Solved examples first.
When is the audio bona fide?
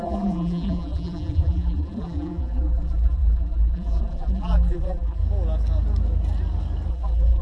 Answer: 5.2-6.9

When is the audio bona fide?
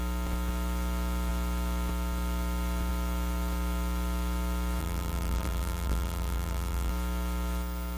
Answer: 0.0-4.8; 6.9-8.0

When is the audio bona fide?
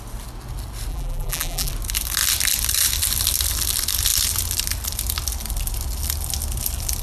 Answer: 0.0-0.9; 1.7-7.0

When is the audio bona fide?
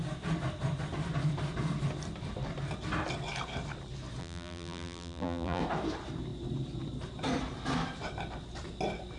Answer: 0.0-4.2; 5.6-9.2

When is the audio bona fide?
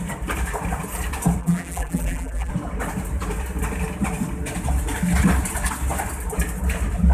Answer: 0.0-1.4; 2.5-7.1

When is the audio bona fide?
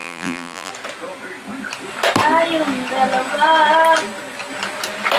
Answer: 0.7-5.2